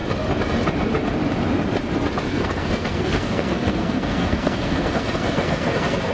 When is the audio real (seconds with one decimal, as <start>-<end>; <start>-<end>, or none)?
0.0-2.3